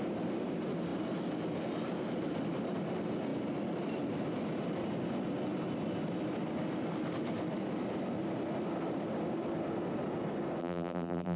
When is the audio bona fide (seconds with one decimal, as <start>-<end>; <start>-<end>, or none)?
0.0-10.6